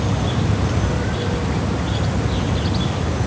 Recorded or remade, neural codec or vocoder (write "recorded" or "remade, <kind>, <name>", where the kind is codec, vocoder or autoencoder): recorded